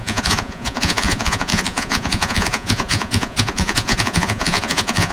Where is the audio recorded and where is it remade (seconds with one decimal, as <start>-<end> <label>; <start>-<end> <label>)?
0.0-5.1 remade